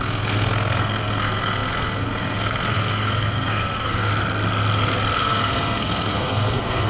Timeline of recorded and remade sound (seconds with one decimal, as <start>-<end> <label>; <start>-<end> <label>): 0.0-4.1 remade; 4.1-5.2 recorded; 5.2-6.9 remade

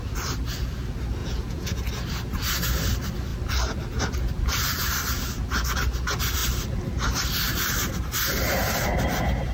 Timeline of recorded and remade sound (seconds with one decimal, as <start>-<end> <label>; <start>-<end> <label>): 0.0-1.2 recorded; 1.2-1.8 remade; 1.8-9.5 recorded